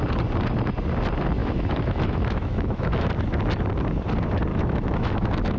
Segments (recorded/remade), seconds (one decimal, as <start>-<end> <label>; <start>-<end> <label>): 0.0-1.4 recorded; 1.4-3.1 remade; 3.1-4.5 recorded; 4.5-5.6 remade

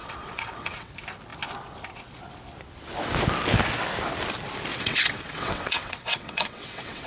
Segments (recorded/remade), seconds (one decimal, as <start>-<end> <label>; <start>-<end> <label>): 0.0-0.9 remade; 0.9-4.7 recorded; 4.7-7.1 remade

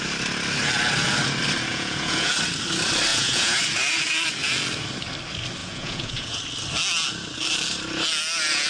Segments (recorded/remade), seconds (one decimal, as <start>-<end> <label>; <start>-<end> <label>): 0.0-1.7 recorded; 1.7-2.3 remade; 2.3-3.1 recorded; 3.1-3.6 remade; 3.6-5.6 recorded; 5.6-6.4 remade; 6.4-8.7 recorded

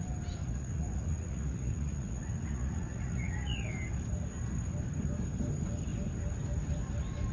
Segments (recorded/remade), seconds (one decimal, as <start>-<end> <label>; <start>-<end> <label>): 0.0-0.4 recorded; 0.4-3.7 remade; 3.7-7.3 recorded

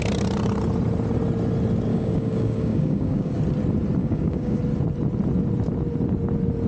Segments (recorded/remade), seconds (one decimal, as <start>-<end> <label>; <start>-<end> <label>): 0.0-1.9 recorded; 1.9-3.4 remade; 3.4-4.0 recorded; 4.0-4.6 remade; 4.6-6.7 recorded

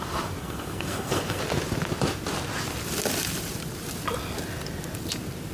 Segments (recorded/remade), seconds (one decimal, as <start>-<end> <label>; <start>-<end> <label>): 0.0-0.4 recorded; 0.4-1.4 remade; 1.4-5.5 recorded

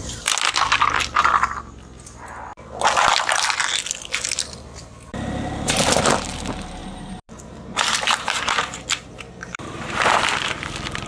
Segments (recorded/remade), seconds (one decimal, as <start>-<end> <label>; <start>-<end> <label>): 0.0-5.1 recorded; 5.1-6.2 remade; 6.2-6.8 recorded; 6.8-10.0 remade; 10.0-11.1 recorded